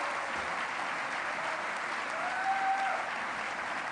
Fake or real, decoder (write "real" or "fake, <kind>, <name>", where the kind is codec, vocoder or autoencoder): real